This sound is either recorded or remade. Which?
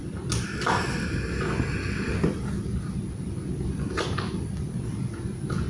recorded